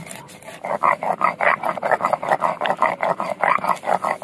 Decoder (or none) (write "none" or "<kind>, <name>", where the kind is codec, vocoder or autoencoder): none